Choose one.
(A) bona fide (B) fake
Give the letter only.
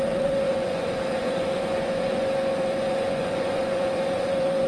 B